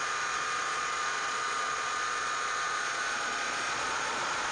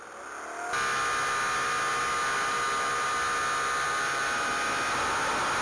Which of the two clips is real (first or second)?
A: second